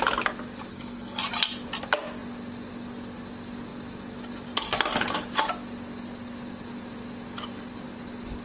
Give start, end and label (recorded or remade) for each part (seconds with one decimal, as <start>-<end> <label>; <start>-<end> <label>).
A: 0.0-0.7 recorded; 0.7-1.2 remade; 1.2-8.4 recorded